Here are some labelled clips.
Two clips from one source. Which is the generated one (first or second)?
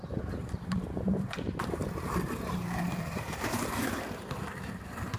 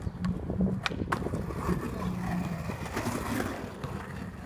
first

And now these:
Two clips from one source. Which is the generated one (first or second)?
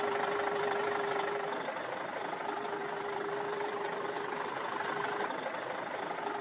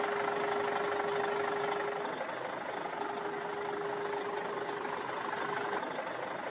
first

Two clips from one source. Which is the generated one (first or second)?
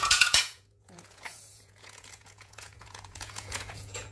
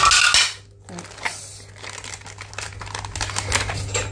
first